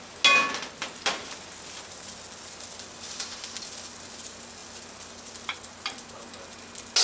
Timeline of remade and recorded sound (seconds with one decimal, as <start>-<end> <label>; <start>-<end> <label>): 0.0-7.0 recorded